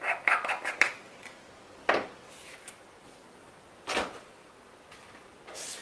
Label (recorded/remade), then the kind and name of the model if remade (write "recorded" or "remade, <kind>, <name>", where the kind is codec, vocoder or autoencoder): recorded